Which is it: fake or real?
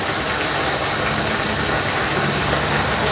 real